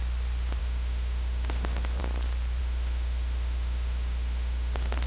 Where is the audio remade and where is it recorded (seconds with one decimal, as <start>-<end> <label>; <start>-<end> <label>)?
0.0-0.6 recorded; 0.6-2.0 remade; 2.0-2.6 recorded; 2.6-5.1 remade